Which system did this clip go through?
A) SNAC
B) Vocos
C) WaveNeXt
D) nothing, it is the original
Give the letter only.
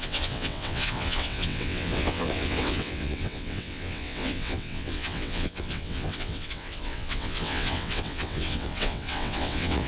C